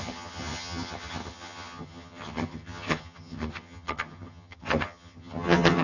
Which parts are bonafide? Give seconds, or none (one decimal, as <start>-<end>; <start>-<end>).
none